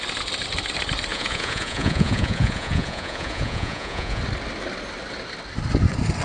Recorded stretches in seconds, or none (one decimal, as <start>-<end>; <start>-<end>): 0.0-1.1; 4.2-6.2